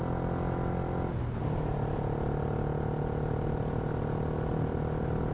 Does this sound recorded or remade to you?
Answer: recorded